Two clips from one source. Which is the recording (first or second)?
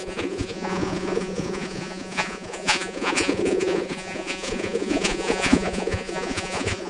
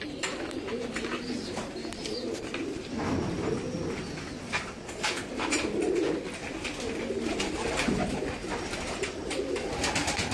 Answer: second